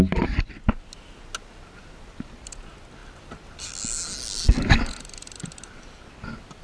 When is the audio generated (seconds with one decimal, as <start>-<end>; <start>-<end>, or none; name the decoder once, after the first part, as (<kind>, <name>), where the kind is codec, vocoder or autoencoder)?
none